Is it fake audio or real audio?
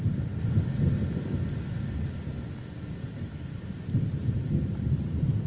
real